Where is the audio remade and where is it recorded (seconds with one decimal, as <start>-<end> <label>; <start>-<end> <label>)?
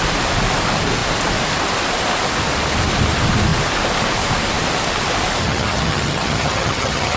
0.0-5.4 recorded; 5.4-7.2 remade